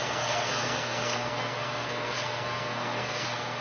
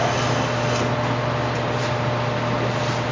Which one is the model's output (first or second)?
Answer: first